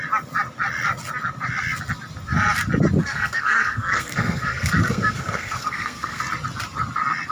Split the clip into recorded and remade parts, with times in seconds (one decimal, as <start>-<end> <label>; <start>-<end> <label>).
0.0-3.0 recorded; 3.0-6.2 remade; 6.2-7.3 recorded